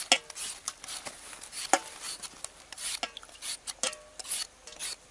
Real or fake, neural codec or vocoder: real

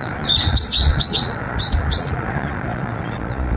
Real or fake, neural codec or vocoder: fake, vocoder, Vocos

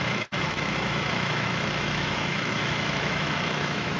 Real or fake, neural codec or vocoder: fake, autoencoder, DAC-VAE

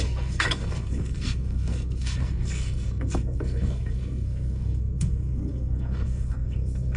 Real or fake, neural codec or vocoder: fake, codec, SNAC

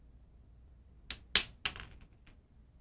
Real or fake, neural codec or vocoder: real